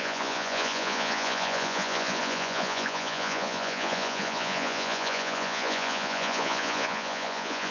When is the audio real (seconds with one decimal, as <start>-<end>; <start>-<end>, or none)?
none